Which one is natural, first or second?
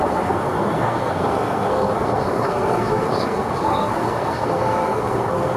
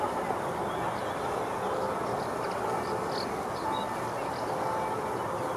second